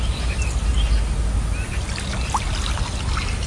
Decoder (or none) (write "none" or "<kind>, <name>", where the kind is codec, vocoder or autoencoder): none